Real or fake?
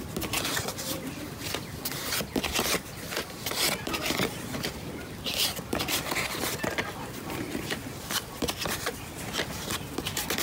fake